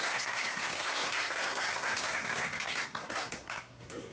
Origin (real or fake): fake